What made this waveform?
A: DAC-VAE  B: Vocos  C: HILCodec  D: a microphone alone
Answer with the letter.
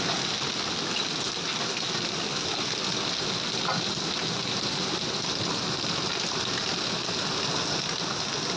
D